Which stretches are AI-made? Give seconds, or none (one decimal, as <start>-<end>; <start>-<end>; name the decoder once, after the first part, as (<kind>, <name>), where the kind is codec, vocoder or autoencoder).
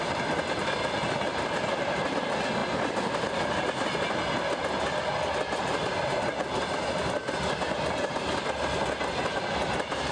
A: none